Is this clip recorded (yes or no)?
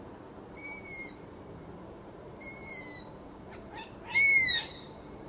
no